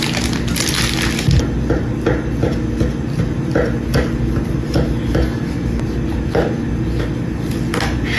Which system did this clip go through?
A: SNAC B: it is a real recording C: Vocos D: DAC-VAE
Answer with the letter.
B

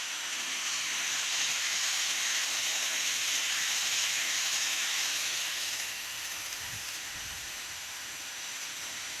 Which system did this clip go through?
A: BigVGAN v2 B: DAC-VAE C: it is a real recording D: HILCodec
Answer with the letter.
B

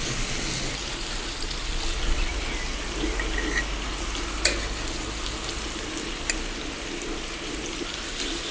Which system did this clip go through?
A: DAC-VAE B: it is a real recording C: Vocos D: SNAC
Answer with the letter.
B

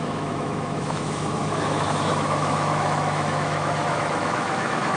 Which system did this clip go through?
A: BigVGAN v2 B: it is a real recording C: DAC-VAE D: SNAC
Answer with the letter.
C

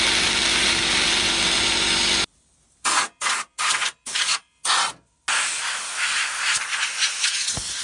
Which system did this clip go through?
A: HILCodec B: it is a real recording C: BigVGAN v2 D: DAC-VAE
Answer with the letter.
B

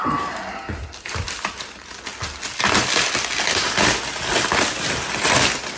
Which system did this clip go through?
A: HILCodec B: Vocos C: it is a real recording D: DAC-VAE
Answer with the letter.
C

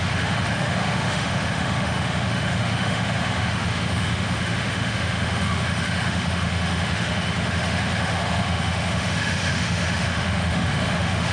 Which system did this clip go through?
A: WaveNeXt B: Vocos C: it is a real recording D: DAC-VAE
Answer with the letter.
D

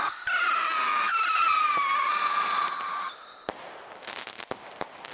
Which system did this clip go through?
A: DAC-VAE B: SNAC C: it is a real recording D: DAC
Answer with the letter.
C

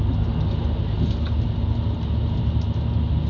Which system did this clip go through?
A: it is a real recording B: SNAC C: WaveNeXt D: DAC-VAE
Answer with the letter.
A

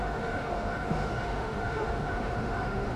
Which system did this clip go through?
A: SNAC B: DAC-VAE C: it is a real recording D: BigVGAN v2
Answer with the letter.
B